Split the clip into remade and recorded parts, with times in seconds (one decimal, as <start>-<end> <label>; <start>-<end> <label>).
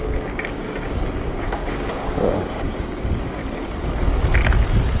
0.0-3.4 remade; 3.4-5.0 recorded